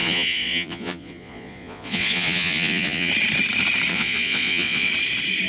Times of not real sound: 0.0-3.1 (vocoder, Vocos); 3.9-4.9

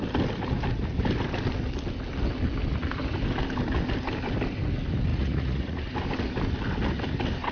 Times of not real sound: 5.1-5.8 (vocoder, Vocos)

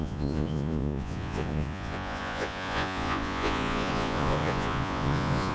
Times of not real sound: 0.0-5.5 (vocoder, Vocos)